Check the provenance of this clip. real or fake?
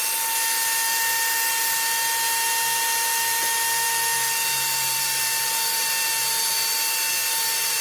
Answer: real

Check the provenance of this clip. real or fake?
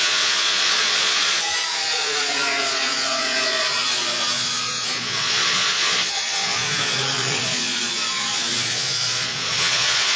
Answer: fake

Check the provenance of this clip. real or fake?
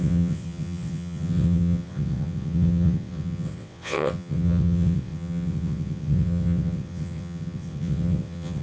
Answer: fake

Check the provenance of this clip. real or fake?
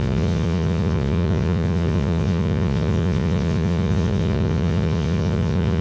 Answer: fake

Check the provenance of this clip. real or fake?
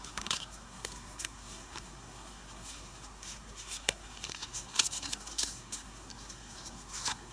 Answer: fake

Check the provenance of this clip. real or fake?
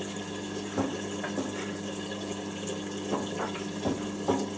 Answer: real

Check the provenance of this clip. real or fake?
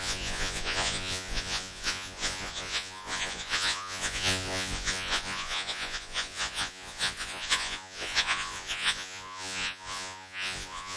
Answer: fake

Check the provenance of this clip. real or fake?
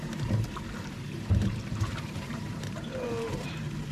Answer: fake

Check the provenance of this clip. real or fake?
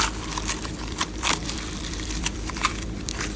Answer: fake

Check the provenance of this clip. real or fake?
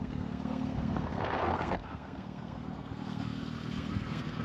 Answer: fake